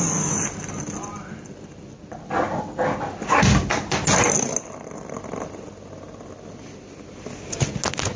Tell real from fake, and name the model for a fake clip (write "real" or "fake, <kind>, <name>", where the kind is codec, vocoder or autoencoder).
real